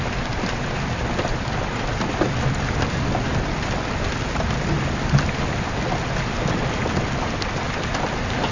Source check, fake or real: real